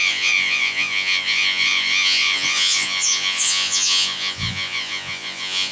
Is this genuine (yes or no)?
no